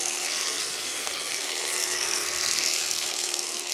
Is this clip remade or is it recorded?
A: remade